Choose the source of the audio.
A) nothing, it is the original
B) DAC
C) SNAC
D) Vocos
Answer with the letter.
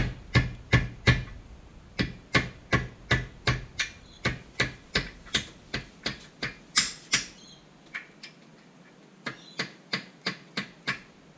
A